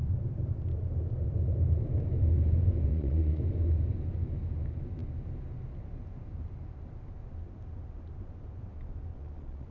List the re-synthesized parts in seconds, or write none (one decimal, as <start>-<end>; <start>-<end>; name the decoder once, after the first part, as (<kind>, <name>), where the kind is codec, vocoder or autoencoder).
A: 2.9-3.4 (vocoder, Vocos); 9.1-9.7